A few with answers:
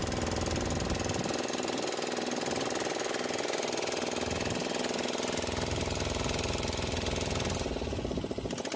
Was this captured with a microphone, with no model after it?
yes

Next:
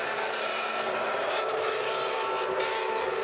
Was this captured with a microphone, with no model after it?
yes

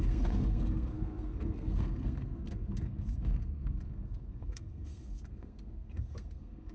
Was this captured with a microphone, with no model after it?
no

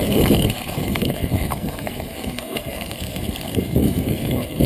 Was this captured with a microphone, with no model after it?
no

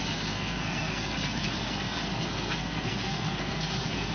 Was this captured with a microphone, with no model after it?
no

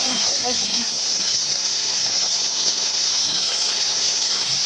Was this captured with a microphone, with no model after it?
no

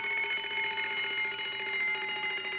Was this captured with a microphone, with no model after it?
yes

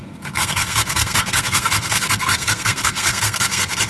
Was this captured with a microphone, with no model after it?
no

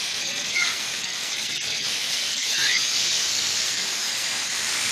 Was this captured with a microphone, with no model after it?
no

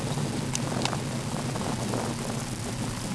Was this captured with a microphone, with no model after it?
yes